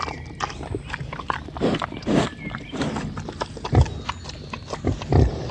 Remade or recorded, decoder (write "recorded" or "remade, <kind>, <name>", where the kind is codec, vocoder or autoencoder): recorded